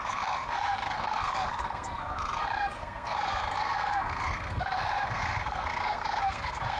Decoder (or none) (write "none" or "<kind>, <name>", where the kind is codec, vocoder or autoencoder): codec, SNAC